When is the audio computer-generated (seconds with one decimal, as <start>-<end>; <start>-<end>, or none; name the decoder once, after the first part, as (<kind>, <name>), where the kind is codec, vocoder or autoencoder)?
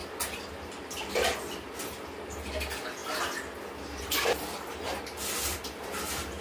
0.5-3.0 (vocoder, BigVGAN v2); 4.0-6.4